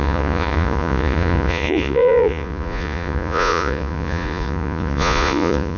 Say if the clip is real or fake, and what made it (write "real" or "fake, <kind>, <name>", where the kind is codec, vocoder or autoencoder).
fake, vocoder, Vocos